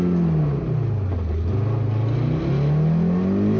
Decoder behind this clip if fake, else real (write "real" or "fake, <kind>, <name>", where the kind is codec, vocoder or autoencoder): real